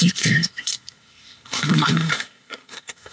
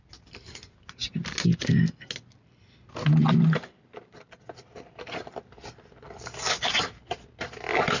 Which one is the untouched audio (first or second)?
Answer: second